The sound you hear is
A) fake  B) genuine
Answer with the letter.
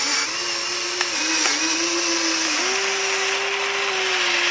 B